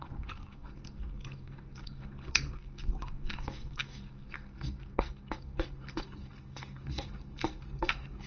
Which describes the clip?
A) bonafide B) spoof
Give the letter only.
B